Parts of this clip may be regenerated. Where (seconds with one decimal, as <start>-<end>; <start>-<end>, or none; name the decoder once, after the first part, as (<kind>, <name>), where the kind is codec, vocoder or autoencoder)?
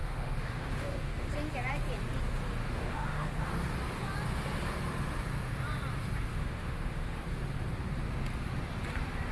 0.0-1.3 (autoencoder, DAC-VAE); 2.6-3.5; 6.3-7.2